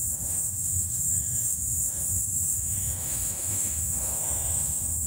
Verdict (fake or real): fake